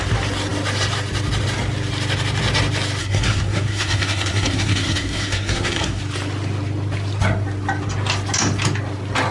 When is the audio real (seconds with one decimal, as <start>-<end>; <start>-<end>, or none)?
0.0-3.0; 6.0-9.3